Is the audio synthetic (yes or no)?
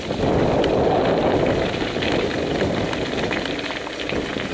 no